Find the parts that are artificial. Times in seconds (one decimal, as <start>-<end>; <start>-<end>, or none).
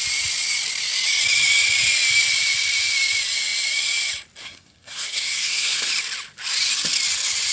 4.4-5.9